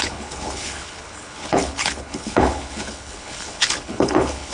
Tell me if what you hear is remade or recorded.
remade